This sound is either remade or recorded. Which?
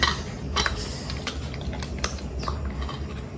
recorded